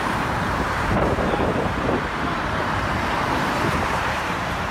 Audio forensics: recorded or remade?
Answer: remade